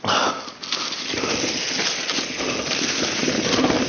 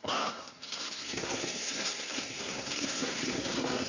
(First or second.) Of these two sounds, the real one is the first